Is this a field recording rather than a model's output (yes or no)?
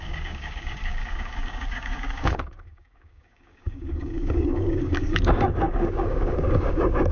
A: no